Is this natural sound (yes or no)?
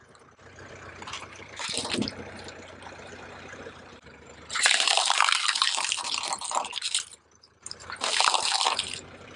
no